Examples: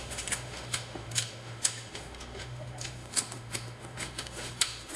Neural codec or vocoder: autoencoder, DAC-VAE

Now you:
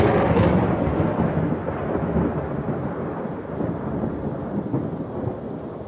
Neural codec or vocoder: none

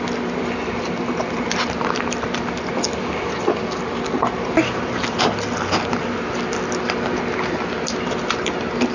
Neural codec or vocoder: none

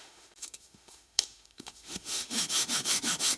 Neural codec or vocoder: autoencoder, DAC-VAE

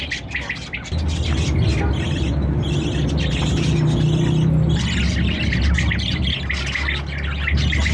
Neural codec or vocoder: none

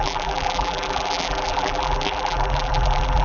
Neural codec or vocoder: vocoder, BigVGAN v2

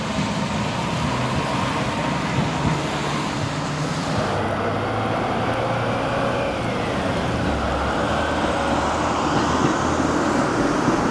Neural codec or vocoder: none